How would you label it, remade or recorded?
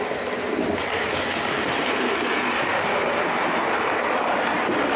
recorded